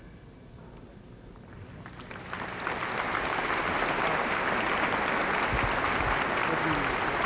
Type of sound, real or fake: real